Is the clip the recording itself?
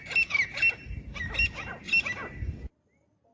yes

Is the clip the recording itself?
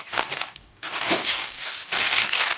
no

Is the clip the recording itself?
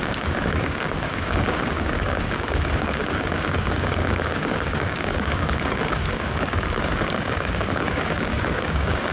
no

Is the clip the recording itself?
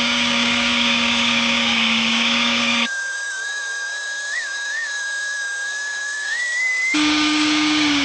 no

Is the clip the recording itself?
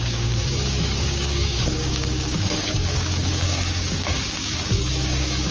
no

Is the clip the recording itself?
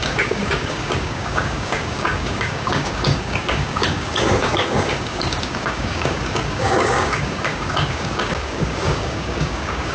no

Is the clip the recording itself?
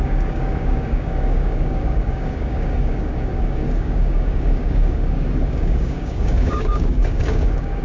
no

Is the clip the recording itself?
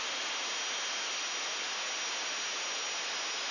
yes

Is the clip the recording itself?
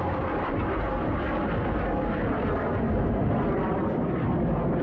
yes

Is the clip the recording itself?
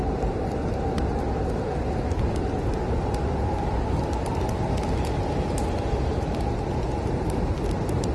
yes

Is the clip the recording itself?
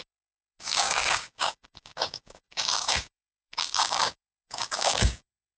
no